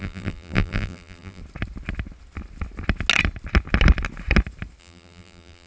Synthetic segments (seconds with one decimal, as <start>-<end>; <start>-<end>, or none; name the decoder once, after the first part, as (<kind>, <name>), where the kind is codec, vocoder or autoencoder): 0.0-1.4 (vocoder, BigVGAN v2); 4.8-5.7